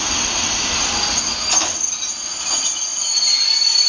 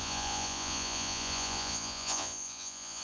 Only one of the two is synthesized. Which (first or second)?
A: second